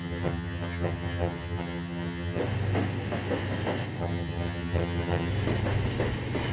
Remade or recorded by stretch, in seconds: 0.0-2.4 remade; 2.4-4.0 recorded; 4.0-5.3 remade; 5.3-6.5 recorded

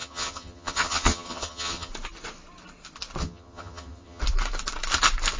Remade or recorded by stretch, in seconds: 0.0-1.9 remade; 1.9-3.2 recorded; 3.2-4.2 remade; 4.2-5.4 recorded

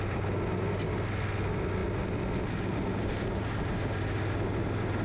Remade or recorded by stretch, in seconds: 0.0-5.0 recorded

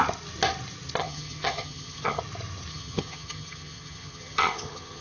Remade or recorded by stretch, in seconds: 0.0-1.0 recorded; 1.0-2.2 remade; 2.2-2.7 recorded; 2.7-5.0 remade